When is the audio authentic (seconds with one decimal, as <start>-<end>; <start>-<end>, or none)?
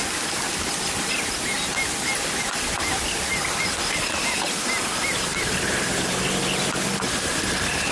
0.0-7.9